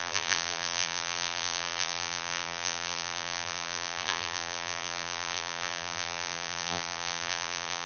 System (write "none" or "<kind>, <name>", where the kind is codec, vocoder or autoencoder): vocoder, BigVGAN v2